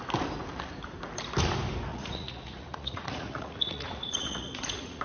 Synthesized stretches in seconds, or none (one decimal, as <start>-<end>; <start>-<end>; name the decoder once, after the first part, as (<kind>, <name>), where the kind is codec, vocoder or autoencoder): 1.9-5.0 (vocoder, Vocos)

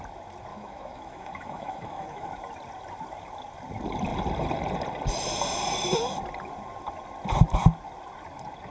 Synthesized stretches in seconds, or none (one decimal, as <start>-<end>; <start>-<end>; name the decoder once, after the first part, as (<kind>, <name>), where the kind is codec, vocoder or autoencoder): 0.5-2.3 (autoencoder, DAC-VAE)

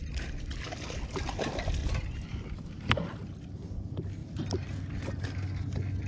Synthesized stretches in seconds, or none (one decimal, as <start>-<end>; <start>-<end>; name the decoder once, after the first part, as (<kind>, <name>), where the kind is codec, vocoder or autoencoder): 1.8-3.2 (vocoder, BigVGAN v2)

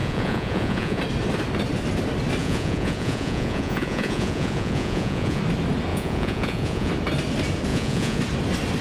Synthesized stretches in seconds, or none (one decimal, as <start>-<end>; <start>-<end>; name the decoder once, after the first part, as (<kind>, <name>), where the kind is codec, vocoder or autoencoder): 0.0-1.0 (vocoder, Vocos); 2.4-5.4; 5.9-6.9; 7.7-8.2

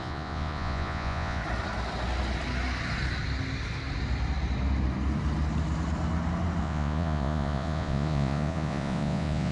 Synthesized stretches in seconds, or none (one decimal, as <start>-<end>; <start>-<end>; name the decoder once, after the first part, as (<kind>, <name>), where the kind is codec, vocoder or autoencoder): 0.0-1.4 (vocoder, Vocos); 6.6-9.5